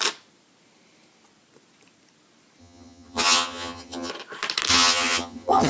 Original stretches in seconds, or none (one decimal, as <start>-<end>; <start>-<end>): 0.0-2.6; 4.1-4.7